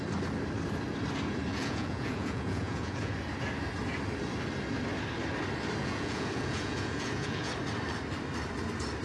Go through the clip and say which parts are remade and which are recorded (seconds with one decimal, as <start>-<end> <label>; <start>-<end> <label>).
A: 0.0-1.5 recorded; 1.5-3.1 remade; 3.1-5.8 recorded; 5.8-7.5 remade; 7.5-9.0 recorded